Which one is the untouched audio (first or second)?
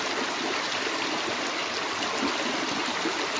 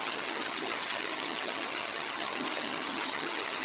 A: first